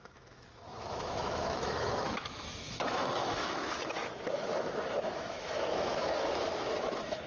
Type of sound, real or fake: fake